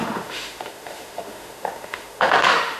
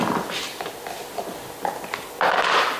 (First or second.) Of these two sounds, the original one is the second